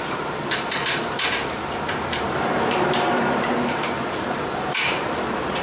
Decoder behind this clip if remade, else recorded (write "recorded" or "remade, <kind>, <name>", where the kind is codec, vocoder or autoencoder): remade, vocoder, BigVGAN v2